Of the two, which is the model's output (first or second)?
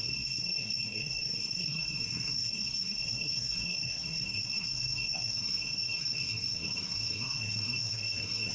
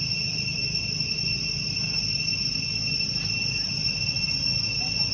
first